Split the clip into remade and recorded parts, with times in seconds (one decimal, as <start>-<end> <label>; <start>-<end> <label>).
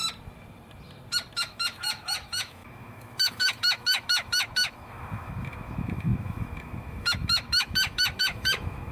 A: 0.0-1.4 recorded; 1.4-8.9 remade